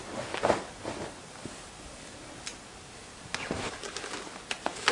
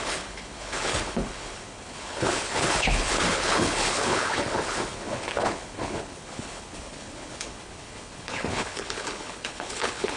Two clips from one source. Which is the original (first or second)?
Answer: first